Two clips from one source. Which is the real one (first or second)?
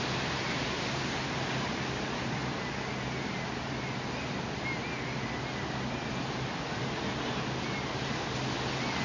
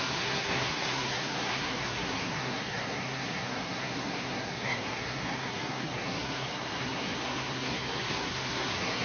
first